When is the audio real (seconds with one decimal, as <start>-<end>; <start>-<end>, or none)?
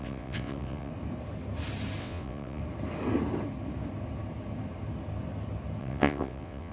0.9-2.0; 2.6-5.8